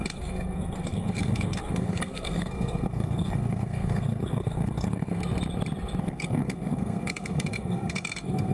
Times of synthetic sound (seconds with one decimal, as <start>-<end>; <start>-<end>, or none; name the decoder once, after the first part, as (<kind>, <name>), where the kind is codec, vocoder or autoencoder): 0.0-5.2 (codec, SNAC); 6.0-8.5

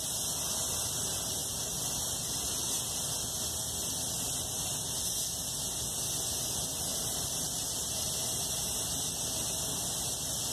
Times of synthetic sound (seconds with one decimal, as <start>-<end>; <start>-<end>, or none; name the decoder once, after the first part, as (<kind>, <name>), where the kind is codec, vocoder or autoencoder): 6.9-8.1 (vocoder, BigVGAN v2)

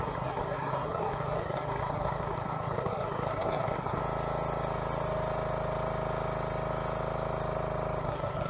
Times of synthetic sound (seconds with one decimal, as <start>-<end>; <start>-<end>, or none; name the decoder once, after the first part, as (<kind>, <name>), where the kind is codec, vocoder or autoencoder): 0.0-4.0 (codec, SNAC); 8.0-8.5

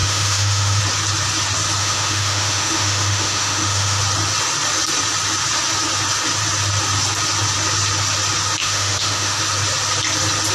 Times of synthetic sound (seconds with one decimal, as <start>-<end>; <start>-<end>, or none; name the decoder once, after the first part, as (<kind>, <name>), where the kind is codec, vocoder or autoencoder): 0.0-0.8 (autoencoder, DAC-VAE); 1.8-4.0; 8.6-9.4

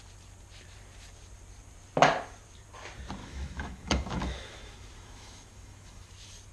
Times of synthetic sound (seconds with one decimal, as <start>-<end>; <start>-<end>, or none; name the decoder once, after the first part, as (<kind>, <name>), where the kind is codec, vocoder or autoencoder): 3.2-6.1 (autoencoder, DAC-VAE)